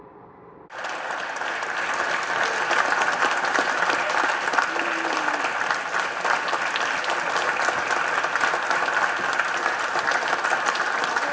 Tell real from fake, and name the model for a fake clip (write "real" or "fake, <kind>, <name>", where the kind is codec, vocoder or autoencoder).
real